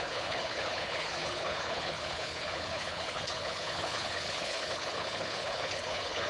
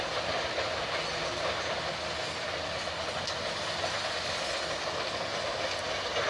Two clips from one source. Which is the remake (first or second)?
first